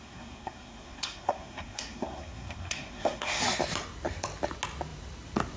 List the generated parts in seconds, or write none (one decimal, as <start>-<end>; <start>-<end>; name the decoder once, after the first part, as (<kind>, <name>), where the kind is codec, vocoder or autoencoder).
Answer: 0.0-3.4 (codec, SNAC)